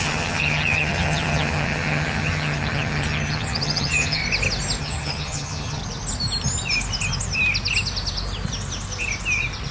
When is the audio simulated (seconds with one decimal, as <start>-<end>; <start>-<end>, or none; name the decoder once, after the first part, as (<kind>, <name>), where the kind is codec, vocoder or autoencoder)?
0.0-4.2 (vocoder, HiFi-GAN); 4.8-5.8